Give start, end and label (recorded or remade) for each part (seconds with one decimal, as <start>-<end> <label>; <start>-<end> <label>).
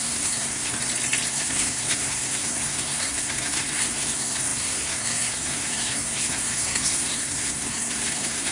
0.0-0.7 remade; 0.7-1.3 recorded; 1.3-8.5 remade